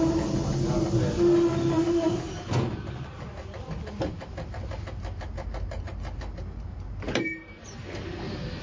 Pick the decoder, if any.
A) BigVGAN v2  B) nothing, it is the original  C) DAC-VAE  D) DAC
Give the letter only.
B